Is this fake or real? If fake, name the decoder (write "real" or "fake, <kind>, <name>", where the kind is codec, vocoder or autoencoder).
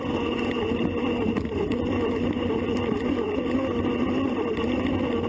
real